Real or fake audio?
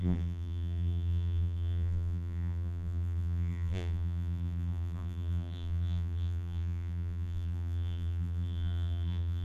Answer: fake